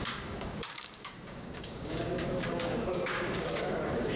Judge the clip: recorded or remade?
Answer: remade